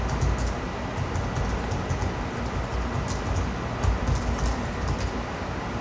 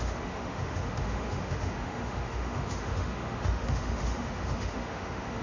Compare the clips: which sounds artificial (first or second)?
second